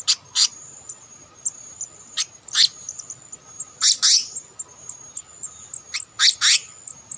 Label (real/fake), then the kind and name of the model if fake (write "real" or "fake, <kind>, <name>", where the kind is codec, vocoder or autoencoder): real